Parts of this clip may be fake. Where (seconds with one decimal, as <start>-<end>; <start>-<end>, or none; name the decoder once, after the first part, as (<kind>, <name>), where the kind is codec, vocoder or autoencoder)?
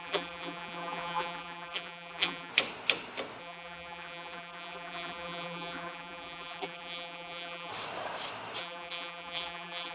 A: 0.0-2.5 (vocoder, BigVGAN v2); 3.4-7.7; 8.6-9.9